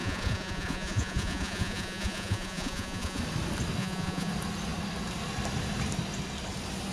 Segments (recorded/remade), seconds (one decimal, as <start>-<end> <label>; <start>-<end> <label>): 0.0-3.2 remade; 3.2-3.8 recorded; 3.8-4.3 remade; 4.3-6.9 recorded